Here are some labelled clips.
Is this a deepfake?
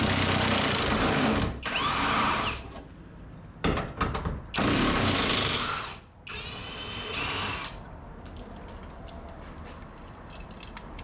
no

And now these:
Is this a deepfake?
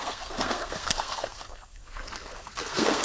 yes